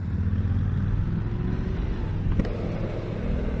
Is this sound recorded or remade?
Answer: recorded